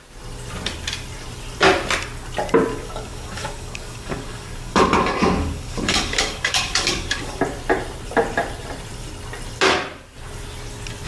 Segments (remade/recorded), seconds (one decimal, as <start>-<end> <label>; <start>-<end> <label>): 0.0-2.7 recorded; 2.7-7.4 remade; 7.4-11.1 recorded